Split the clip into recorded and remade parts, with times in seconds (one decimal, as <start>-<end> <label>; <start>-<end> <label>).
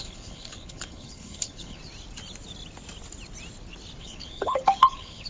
0.0-1.8 remade; 1.8-4.0 recorded; 4.0-5.3 remade